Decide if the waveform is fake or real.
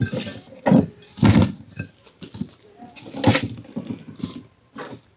real